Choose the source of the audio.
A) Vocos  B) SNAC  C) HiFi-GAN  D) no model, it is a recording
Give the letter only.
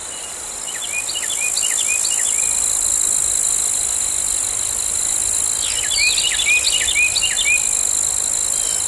D